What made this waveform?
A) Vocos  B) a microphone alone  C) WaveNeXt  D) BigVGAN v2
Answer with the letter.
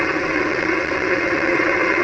C